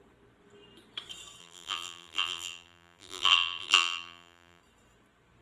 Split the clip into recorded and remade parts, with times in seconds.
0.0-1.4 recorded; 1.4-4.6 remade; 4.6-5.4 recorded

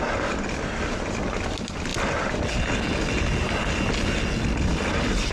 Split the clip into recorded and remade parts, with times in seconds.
0.0-5.3 recorded

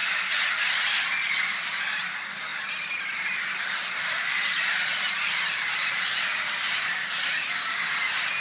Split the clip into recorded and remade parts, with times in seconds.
0.0-2.5 recorded; 2.5-7.5 remade; 7.5-8.4 recorded

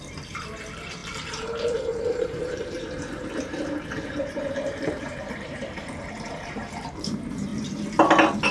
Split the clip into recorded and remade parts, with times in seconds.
0.0-7.5 remade; 7.5-8.5 recorded